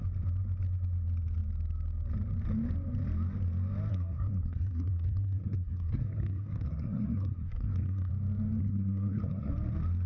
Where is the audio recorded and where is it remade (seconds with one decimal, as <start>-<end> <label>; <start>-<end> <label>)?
0.0-3.9 recorded; 3.9-8.1 remade; 8.1-8.6 recorded; 8.6-9.5 remade; 9.5-10.1 recorded